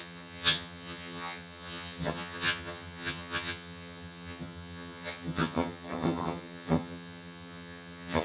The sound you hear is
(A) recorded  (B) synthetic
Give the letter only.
B